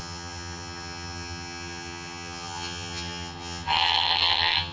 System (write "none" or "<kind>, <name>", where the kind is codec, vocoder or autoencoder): vocoder, HiFi-GAN